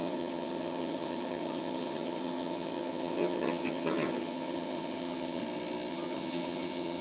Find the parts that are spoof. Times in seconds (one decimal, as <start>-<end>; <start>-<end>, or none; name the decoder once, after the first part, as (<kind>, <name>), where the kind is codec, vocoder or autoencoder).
0.0-5.4 (vocoder, HiFi-GAN); 5.9-7.0